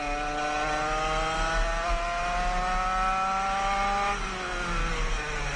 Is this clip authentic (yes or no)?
yes